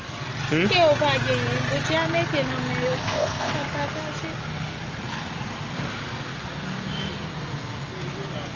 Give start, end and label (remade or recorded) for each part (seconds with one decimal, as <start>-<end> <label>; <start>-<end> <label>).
0.0-3.0 recorded; 3.0-3.5 remade; 3.5-8.6 recorded